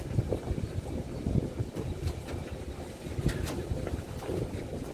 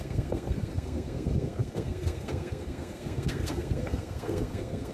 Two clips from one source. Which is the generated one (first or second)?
second